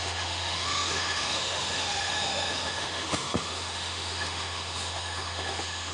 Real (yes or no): no